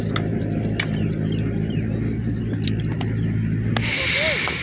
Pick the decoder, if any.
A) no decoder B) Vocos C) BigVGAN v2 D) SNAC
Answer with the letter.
A